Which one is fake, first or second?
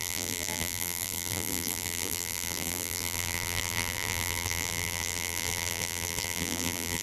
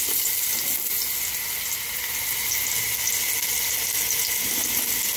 first